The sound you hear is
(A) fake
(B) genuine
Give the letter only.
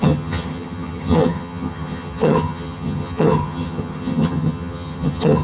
A